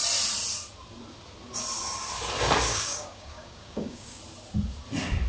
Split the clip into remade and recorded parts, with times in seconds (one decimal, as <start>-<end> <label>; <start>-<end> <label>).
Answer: 0.0-2.7 recorded; 2.7-4.2 remade; 4.2-5.3 recorded